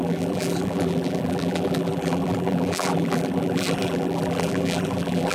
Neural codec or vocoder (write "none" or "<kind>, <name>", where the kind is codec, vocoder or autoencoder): vocoder, BigVGAN v2